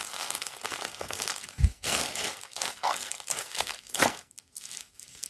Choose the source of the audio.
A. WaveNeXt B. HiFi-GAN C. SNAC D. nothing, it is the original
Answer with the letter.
C